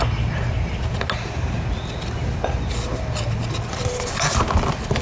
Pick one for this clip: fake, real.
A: real